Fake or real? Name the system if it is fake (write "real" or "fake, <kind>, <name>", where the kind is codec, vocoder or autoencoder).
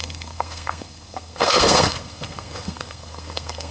fake, codec, SNAC